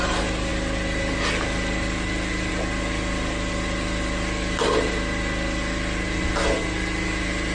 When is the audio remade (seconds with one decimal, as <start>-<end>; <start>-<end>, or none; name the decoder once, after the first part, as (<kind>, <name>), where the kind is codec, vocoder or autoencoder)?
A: none

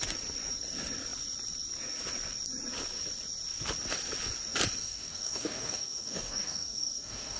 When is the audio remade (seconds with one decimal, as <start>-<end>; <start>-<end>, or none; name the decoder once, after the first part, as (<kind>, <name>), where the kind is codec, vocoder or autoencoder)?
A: 4.8-7.4 (codec, DAC)

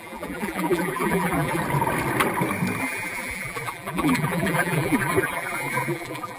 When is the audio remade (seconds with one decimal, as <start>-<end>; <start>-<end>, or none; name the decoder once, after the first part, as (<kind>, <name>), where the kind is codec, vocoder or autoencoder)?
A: 0.0-1.6 (vocoder, BigVGAN v2); 2.8-6.4

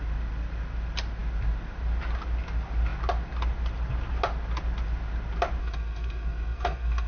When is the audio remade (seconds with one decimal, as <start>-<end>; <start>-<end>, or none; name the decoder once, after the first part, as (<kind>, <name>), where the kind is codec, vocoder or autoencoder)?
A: 5.6-7.1 (codec, SNAC)

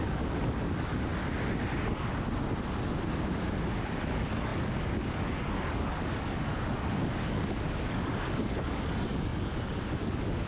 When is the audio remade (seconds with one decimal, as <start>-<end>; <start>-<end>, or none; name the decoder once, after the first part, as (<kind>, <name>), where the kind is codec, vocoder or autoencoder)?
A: 0.0-1.1 (codec, DAC); 3.8-10.5

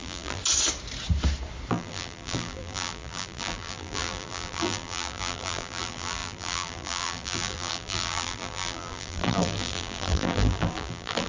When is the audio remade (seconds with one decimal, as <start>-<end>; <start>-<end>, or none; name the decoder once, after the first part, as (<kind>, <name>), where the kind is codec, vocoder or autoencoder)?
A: 0.0-0.4 (vocoder, BigVGAN v2); 1.7-11.3

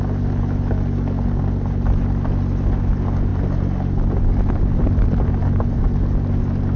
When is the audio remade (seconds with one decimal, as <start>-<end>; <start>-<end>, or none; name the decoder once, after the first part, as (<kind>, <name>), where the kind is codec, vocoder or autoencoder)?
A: none

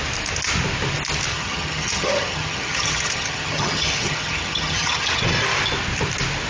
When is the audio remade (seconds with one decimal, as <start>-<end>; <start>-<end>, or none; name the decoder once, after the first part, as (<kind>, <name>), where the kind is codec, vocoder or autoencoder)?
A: 1.3-5.2 (vocoder, HiFi-GAN)